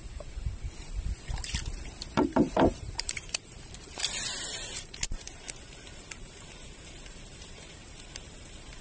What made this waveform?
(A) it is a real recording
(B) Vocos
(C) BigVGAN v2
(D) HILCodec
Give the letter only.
C